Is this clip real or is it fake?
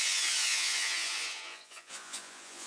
fake